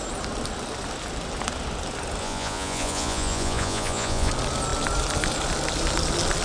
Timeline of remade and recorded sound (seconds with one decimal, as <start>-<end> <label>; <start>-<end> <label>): 0.0-2.2 recorded; 2.2-4.3 remade; 4.3-6.4 recorded